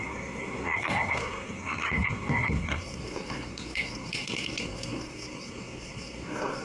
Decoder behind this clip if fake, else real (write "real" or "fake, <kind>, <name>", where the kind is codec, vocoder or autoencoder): fake, codec, SNAC